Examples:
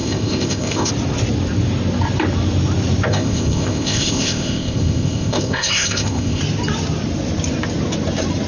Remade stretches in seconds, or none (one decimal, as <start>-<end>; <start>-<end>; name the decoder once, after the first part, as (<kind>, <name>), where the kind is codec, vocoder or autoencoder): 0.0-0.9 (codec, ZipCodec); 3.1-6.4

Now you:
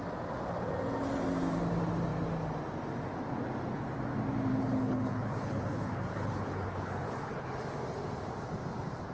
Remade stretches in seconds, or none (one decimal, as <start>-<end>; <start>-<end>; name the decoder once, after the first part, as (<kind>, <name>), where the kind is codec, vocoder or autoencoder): 4.5-7.5 (codec, HILCodec)

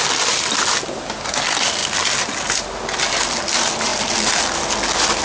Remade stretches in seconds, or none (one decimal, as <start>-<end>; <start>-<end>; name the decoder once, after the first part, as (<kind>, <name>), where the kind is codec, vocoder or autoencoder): none